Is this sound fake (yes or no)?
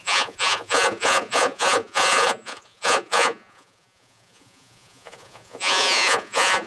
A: yes